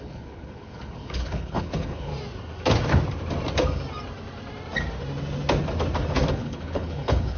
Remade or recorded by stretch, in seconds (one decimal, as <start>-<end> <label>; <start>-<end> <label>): 0.0-2.1 remade; 2.1-6.3 recorded; 6.3-7.4 remade